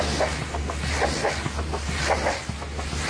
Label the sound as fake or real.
real